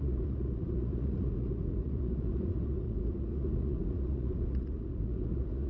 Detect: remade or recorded remade